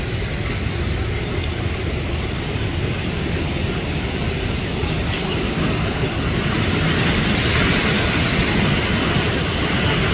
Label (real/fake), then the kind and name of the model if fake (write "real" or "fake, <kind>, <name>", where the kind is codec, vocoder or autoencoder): real